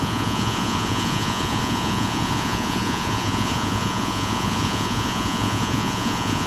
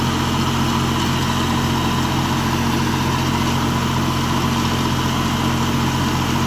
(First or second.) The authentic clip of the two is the second